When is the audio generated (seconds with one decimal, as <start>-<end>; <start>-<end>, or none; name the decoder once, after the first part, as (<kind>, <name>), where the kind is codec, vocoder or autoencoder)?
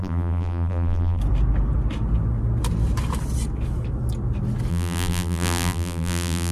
0.0-1.2 (vocoder, BigVGAN v2); 4.7-6.5